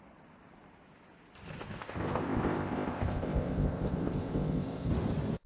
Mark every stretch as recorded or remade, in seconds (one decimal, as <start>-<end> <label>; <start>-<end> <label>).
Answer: 0.0-1.8 recorded; 1.8-4.9 remade; 4.9-5.5 recorded